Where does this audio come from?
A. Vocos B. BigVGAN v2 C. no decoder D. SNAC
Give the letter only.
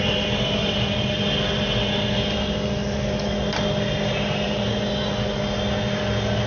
C